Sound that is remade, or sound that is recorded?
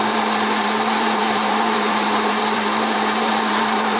remade